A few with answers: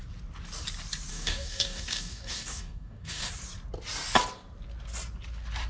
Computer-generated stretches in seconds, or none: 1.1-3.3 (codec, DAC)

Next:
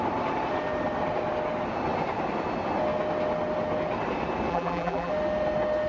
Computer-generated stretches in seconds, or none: 4.5-5.1 (vocoder, BigVGAN v2)

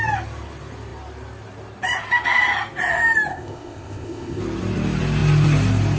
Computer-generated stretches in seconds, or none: 3.3-4.4 (codec, ZipCodec)

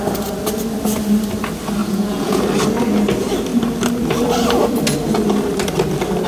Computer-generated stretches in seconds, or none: 1.8-2.4 (vocoder, Vocos)

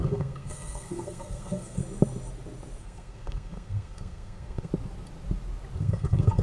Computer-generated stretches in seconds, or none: 0.0-1.8 (codec, SNAC); 2.8-4.7; 5.8-6.4

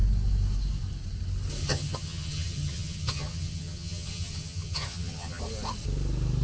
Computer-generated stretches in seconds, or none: 1.6-5.4 (vocoder, HiFi-GAN)